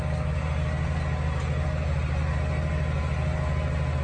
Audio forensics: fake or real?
real